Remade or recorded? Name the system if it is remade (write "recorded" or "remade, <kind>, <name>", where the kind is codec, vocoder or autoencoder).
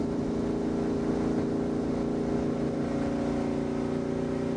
recorded